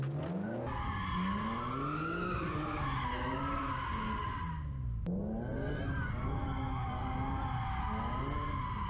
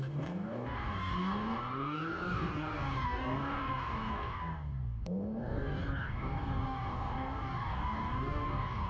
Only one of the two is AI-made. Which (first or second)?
second